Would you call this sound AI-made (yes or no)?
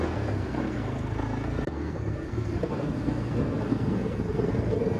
yes